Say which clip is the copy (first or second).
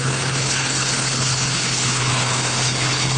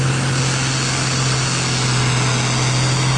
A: first